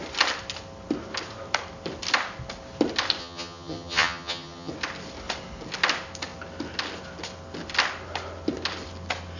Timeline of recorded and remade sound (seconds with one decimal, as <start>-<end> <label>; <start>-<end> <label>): 0.0-3.2 recorded; 3.2-4.7 remade; 4.7-9.4 recorded